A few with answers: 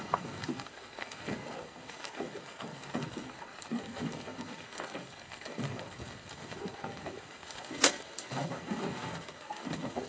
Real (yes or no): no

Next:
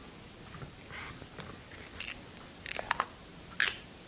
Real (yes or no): yes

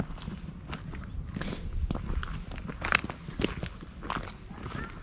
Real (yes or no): yes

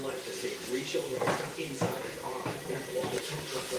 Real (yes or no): yes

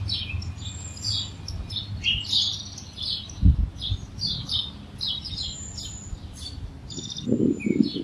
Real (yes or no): yes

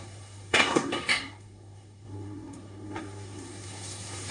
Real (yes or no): no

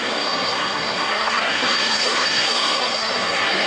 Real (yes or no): no